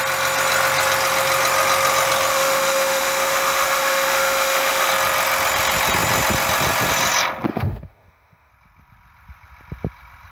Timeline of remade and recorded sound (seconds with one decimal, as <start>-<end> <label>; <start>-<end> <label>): 0.0-2.3 recorded; 2.3-4.9 remade; 4.9-7.5 recorded; 7.5-8.5 remade; 8.5-10.3 recorded